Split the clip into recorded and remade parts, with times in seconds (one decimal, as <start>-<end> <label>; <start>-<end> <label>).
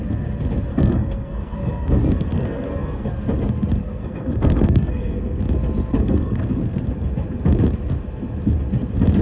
0.0-0.7 recorded; 0.7-3.1 remade; 3.1-3.8 recorded; 3.8-5.4 remade; 5.4-5.9 recorded; 5.9-6.8 remade; 6.8-9.2 recorded